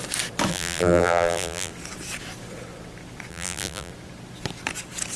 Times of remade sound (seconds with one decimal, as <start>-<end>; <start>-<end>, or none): 0.5-1.7; 3.3-3.9